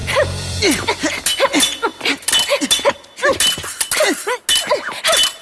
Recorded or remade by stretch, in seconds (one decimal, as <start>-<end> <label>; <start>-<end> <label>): 0.0-0.6 remade; 0.6-5.4 recorded